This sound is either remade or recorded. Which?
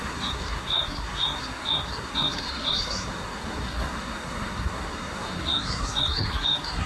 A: remade